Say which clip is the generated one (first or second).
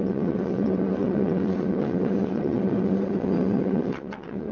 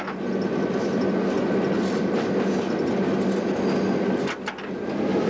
first